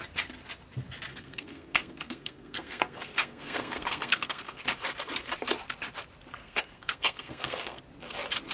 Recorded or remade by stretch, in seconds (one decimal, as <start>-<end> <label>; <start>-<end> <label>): 0.0-1.1 recorded; 1.1-4.6 remade; 4.6-6.4 recorded; 6.4-7.8 remade; 7.8-8.5 recorded